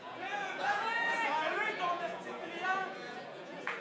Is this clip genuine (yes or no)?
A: no